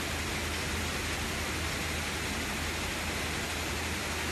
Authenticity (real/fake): real